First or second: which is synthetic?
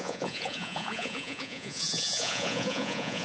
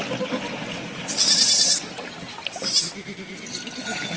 first